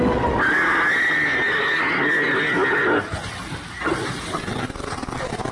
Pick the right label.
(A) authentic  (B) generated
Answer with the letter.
A